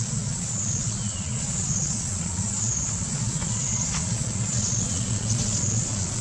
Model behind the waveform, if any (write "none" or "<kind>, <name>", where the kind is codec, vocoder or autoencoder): vocoder, Vocos